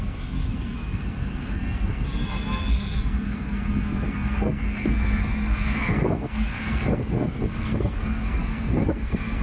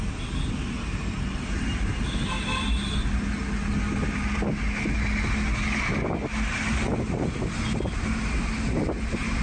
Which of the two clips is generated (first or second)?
first